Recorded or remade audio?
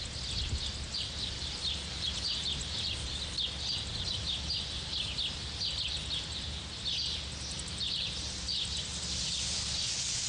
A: recorded